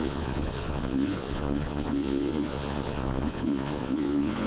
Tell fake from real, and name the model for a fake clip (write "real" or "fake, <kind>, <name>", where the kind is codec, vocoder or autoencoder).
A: fake, vocoder, Vocos